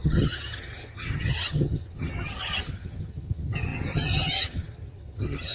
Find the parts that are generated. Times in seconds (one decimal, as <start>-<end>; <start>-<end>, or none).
0.0-5.5